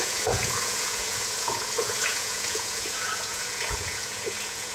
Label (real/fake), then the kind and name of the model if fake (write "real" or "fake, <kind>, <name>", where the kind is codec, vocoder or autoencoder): fake, vocoder, Vocos